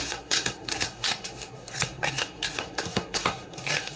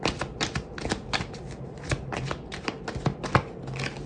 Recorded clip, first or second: second